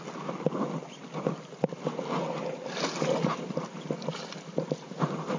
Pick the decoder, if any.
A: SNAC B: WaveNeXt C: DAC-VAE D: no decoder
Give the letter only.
D